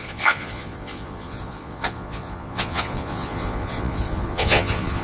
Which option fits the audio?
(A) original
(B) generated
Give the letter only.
B